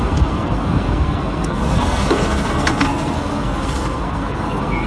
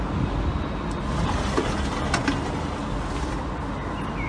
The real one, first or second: second